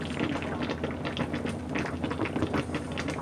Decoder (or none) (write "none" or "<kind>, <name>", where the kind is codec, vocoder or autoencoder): none